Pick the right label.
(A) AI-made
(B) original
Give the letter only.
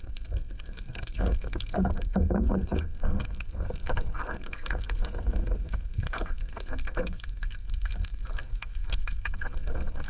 A